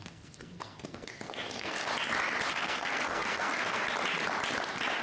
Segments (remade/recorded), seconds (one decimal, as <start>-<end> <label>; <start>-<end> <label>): 0.0-1.9 remade; 1.9-2.5 recorded; 2.5-3.8 remade; 3.8-5.0 recorded